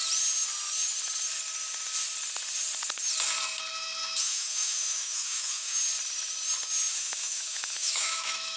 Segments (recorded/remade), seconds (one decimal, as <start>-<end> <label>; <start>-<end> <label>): 0.0-4.2 recorded; 4.2-5.8 remade; 5.8-6.9 recorded; 6.9-8.6 remade